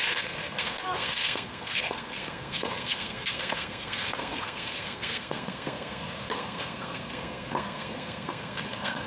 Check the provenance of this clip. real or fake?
fake